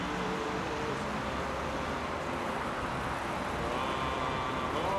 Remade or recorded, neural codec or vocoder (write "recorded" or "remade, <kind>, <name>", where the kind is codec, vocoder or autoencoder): recorded